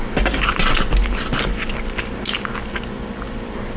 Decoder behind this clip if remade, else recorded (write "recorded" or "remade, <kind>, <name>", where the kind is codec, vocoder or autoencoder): recorded